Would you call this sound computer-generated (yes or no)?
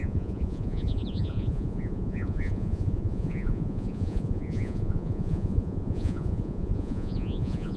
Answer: yes